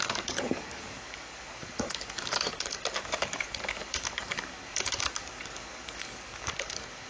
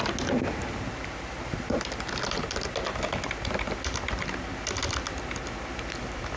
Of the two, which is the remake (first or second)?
first